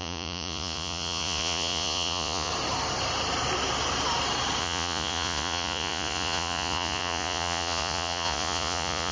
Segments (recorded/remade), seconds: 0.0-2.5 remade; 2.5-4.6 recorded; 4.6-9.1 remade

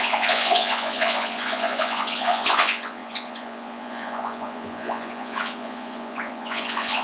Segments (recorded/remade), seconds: 0.0-7.0 remade

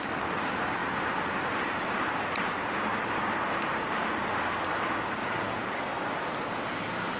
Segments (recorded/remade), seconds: 0.0-5.2 recorded; 5.2-5.7 remade; 5.7-7.2 recorded